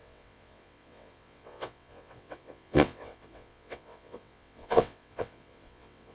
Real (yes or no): no